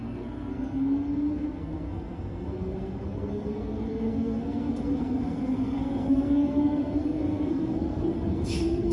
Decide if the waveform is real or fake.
fake